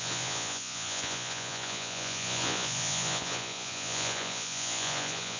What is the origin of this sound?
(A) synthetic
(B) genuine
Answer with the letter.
A